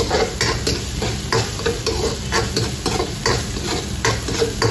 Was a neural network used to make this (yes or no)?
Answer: no